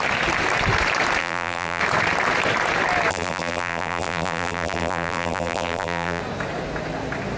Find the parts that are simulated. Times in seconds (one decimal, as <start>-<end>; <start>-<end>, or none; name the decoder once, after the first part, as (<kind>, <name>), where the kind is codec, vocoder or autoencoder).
1.2-1.8 (vocoder, BigVGAN v2); 3.1-6.2